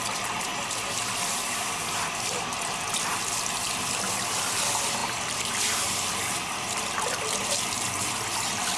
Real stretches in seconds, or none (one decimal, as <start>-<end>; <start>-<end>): 0.0-0.5; 3.8-5.0; 7.5-8.8